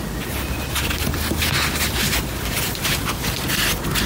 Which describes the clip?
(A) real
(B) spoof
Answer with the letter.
A